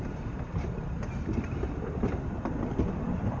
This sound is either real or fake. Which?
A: fake